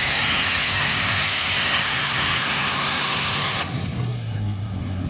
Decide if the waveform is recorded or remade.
remade